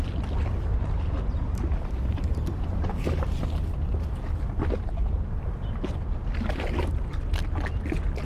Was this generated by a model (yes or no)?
no